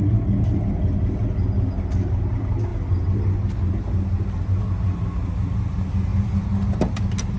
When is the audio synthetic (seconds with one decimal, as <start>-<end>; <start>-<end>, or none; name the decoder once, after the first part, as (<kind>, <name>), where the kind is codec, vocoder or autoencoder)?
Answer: none